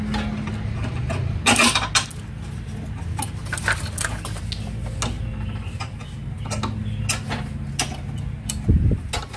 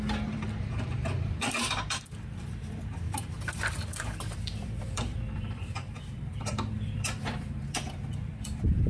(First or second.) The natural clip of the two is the first